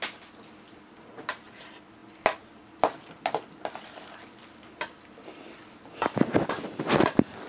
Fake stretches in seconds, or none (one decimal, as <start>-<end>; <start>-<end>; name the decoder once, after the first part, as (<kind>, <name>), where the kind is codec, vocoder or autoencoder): none